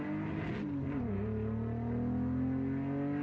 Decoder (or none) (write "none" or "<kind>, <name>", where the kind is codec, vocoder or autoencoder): none